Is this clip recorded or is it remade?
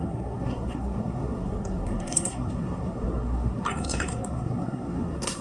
remade